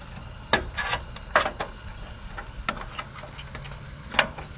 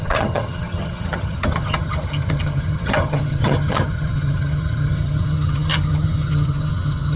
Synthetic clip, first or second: second